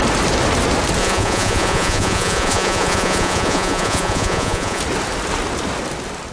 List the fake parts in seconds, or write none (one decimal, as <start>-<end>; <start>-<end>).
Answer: 1.0-4.8